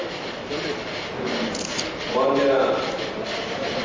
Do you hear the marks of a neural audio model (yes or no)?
no